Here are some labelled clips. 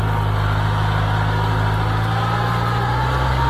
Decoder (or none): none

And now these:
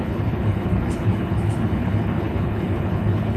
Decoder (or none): codec, HILCodec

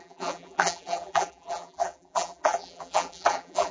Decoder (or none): vocoder, BigVGAN v2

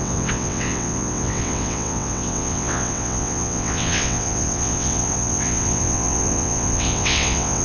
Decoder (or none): vocoder, WaveNeXt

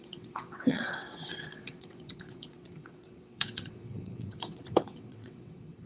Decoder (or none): vocoder, WaveNeXt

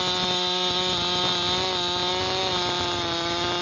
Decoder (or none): none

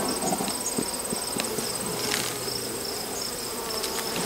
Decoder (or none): none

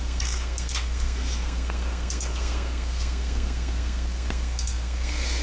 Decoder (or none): codec, SNAC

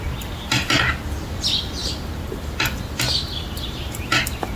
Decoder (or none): none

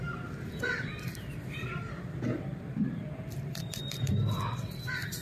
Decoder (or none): vocoder, BigVGAN v2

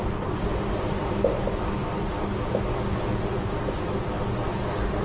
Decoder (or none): none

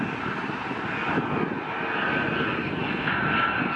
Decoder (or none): none